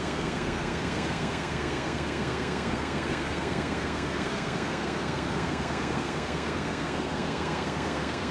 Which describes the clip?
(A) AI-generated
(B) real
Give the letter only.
A